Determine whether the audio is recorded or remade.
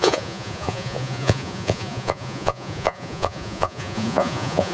remade